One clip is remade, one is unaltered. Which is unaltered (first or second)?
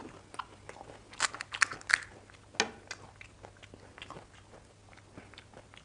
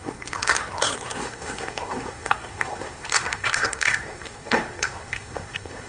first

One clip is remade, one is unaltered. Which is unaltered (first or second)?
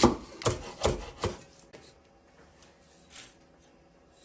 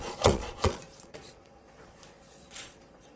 first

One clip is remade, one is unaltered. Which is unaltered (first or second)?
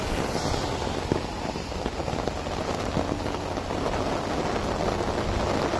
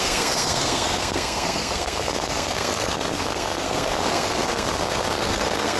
first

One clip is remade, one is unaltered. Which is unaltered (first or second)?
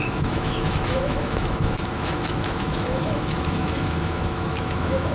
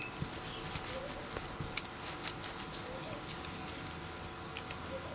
second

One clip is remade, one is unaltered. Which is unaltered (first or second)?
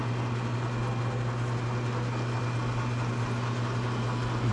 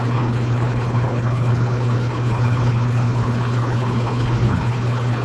first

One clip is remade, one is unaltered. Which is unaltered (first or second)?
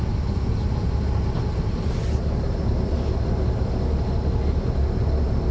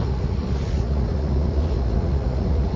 first